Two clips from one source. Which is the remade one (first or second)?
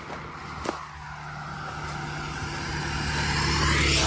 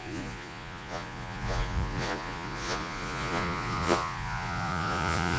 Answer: second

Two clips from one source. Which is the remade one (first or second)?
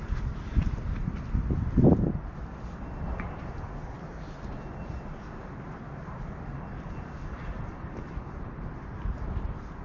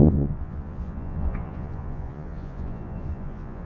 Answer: second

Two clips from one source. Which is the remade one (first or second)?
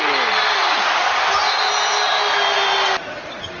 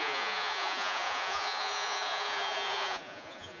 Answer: second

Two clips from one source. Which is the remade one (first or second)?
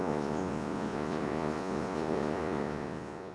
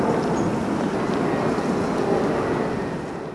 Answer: first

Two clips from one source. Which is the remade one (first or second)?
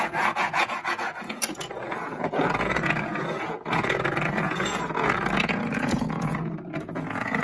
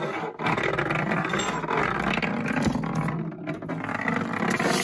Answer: first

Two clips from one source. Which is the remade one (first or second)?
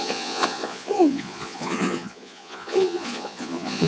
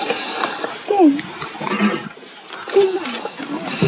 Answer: first